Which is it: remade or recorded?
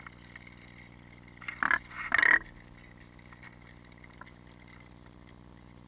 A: recorded